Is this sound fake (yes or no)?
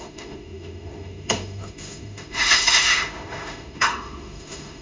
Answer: yes